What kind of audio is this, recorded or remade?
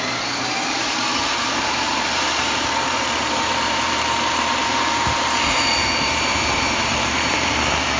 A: remade